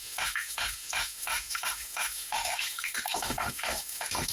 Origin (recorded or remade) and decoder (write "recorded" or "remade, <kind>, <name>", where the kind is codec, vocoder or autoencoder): remade, autoencoder, DAC-VAE